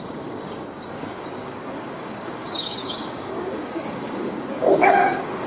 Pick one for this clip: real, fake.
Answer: fake